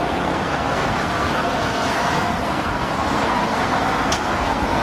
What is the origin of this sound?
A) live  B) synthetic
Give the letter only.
B